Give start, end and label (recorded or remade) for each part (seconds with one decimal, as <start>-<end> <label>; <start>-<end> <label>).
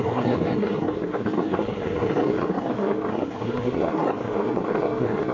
0.0-5.3 remade